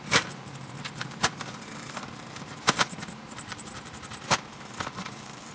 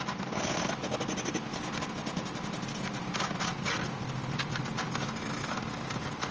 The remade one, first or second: first